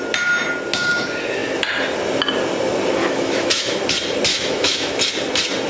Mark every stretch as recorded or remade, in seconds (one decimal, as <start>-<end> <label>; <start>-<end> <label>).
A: 0.0-3.0 recorded; 3.0-3.8 remade; 3.8-4.3 recorded; 4.3-5.0 remade; 5.0-5.7 recorded

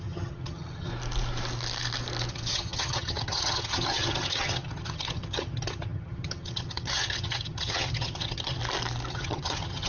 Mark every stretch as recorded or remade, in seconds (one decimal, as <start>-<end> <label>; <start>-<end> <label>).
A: 0.0-0.9 remade; 0.9-2.3 recorded; 2.3-8.6 remade; 8.6-9.1 recorded; 9.1-9.9 remade